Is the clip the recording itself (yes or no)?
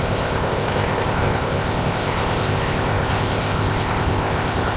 no